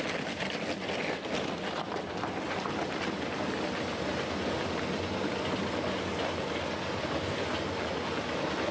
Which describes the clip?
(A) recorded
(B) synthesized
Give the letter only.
A